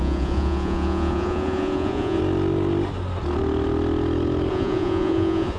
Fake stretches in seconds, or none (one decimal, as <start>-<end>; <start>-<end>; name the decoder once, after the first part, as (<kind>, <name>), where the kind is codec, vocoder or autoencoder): 0.0-2.2 (vocoder, Vocos); 4.5-5.6